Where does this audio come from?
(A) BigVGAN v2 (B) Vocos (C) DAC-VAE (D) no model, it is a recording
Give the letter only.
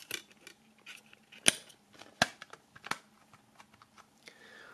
D